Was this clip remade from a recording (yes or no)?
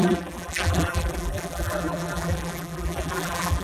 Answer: yes